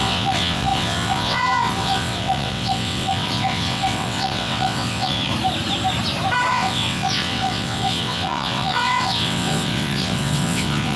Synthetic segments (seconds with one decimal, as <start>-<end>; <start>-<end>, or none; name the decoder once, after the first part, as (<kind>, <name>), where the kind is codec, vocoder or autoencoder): 0.0-5.3 (vocoder, WaveNeXt); 6.5-11.0